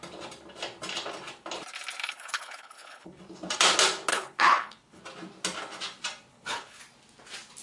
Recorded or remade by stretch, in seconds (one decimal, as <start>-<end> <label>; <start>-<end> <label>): 0.0-2.0 recorded; 2.0-3.2 remade; 3.2-4.1 recorded; 4.1-5.0 remade; 5.0-6.3 recorded; 6.3-6.8 remade; 6.8-7.6 recorded